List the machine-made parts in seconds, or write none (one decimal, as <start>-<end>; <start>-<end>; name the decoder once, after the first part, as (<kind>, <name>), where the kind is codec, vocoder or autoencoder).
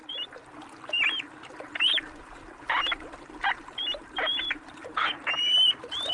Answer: 0.0-6.1 (vocoder, BigVGAN v2)